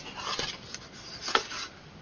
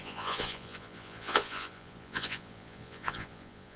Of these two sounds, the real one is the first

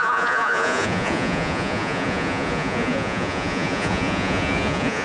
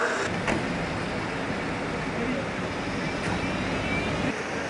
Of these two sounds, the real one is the second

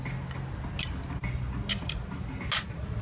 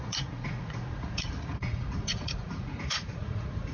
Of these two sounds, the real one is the first